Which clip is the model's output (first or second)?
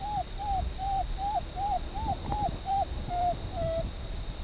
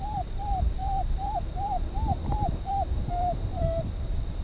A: second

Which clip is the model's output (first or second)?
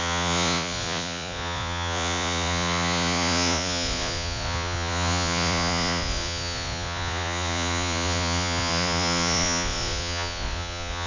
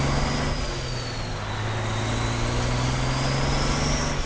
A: first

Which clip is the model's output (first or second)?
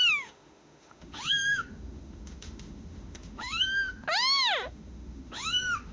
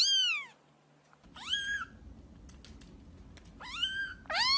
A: first